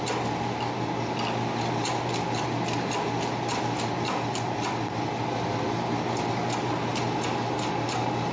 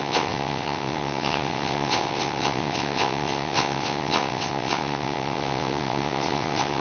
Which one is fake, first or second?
second